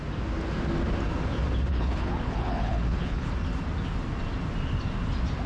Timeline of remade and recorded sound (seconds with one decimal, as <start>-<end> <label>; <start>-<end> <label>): 0.0-1.7 recorded; 1.7-3.3 remade; 3.3-5.5 recorded